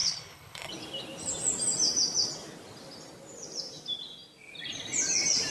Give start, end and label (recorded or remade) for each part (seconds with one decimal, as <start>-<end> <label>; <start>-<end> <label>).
0.0-0.7 remade; 0.7-5.5 recorded

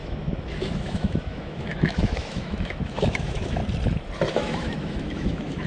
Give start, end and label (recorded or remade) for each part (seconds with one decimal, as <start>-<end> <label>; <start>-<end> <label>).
0.0-3.6 remade; 3.6-4.3 recorded; 4.3-5.7 remade

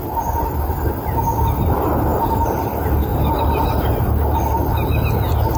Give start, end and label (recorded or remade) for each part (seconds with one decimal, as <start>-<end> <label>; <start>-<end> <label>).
0.0-2.1 recorded; 2.1-2.7 remade; 2.7-3.1 recorded; 3.1-4.0 remade; 4.0-5.6 recorded

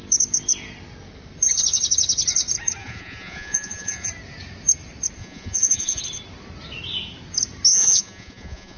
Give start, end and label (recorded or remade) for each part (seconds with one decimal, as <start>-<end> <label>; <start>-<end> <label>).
0.0-2.8 recorded; 2.8-4.1 remade; 4.1-5.2 recorded; 5.2-6.0 remade; 6.0-7.7 recorded; 7.7-8.8 remade